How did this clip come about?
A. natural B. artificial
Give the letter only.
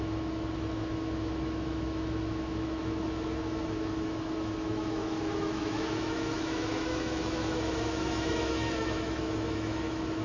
B